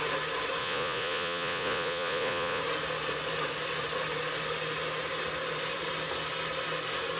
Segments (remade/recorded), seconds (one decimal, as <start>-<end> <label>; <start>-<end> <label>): 0.0-0.6 recorded; 0.6-2.6 remade; 2.6-7.2 recorded